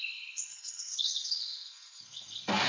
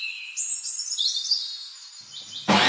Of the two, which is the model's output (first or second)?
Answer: first